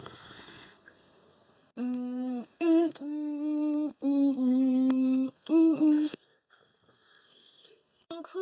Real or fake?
fake